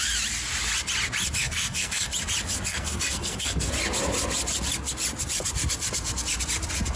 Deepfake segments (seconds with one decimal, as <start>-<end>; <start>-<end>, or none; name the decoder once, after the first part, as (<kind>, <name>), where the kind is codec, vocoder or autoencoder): 1.4-2.1 (codec, SNAC); 2.7-3.7